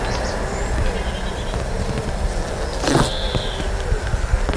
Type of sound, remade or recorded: recorded